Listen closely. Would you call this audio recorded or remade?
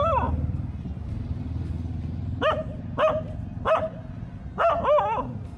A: recorded